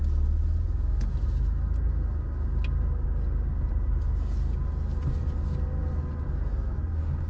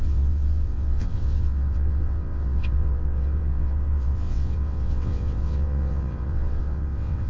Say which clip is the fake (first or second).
second